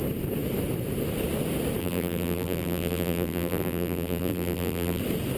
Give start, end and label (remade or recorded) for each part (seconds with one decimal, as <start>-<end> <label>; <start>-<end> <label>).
0.0-1.8 recorded; 1.8-5.0 remade; 5.0-5.4 recorded